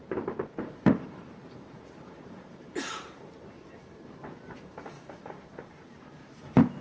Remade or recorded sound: remade